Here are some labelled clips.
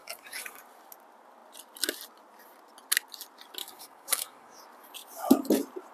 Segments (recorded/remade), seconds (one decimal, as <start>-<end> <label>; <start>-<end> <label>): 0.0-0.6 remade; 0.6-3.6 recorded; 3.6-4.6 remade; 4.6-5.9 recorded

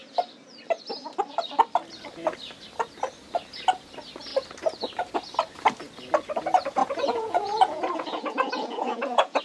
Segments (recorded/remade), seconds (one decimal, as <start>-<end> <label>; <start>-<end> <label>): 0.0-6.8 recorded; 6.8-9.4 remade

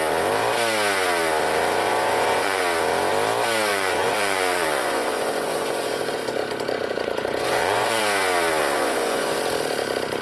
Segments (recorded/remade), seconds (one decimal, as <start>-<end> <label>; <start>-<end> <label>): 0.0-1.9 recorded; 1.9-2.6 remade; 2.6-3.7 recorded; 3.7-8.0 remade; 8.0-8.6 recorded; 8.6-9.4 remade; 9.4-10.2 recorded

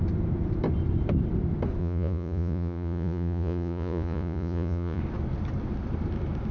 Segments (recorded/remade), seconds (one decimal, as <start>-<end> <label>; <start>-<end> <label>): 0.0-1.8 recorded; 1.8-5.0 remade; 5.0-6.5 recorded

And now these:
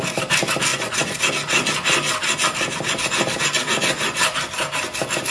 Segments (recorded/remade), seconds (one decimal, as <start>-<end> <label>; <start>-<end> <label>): 0.0-0.7 recorded; 0.7-1.2 remade; 1.2-5.3 recorded

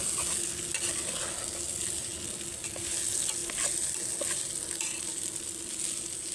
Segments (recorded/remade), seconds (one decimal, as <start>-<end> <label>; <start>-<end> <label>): 0.0-6.3 recorded